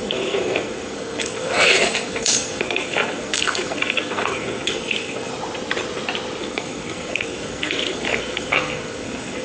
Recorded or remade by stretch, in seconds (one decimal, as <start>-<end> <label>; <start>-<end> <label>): 0.0-5.3 remade; 5.3-6.4 recorded; 6.4-9.4 remade